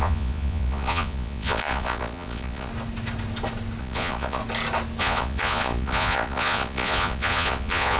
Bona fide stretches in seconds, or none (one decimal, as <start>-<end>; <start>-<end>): 2.7-3.8; 4.4-5.0